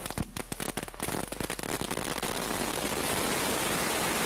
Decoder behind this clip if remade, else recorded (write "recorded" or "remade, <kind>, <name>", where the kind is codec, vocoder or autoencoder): recorded